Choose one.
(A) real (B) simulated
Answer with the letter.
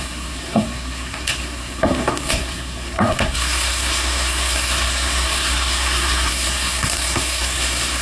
B